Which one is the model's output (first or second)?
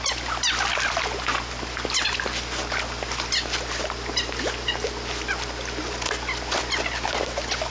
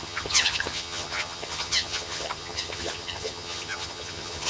second